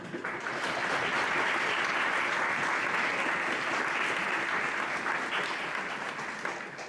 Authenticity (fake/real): real